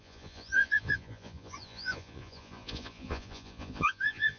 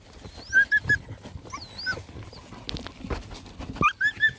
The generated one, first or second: first